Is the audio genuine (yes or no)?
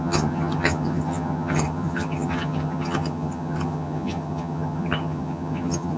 no